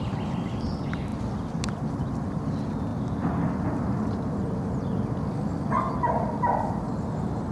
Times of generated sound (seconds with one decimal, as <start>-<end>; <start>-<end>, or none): none